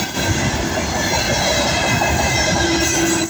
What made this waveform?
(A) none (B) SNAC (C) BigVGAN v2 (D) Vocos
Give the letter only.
A